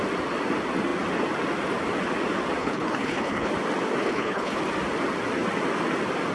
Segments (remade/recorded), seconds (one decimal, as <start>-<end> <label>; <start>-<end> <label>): 0.0-2.6 recorded; 2.6-3.5 remade; 3.5-4.0 recorded; 4.0-4.6 remade; 4.6-6.3 recorded